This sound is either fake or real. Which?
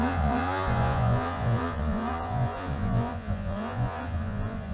fake